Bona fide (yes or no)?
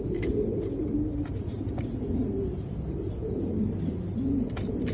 yes